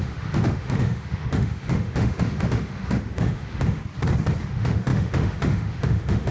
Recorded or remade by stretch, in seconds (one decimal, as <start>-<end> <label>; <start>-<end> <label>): 0.0-3.8 remade; 3.8-4.5 recorded; 4.5-6.3 remade